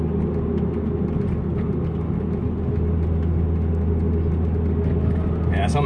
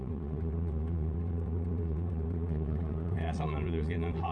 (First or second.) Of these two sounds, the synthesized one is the second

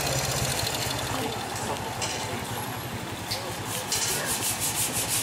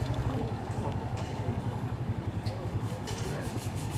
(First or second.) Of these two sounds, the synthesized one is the second